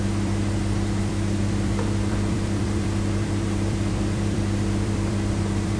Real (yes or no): no